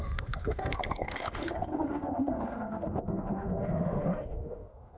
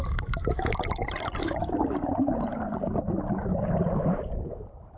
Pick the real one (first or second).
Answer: second